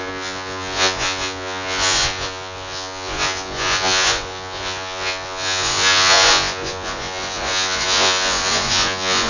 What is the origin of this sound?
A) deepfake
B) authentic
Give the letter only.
A